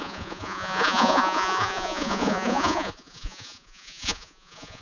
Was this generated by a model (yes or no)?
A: yes